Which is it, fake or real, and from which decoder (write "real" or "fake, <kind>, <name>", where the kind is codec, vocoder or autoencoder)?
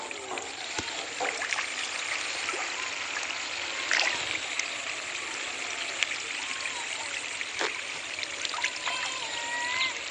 real